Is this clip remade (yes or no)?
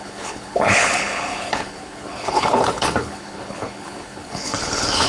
yes